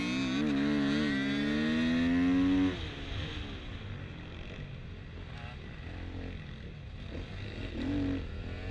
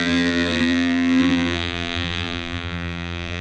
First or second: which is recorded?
first